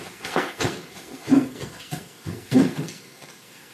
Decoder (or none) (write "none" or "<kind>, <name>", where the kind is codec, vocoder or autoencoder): codec, SNAC